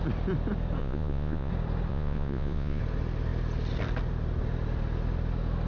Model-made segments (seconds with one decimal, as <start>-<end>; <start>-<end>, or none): 0.8-1.5; 1.9-2.8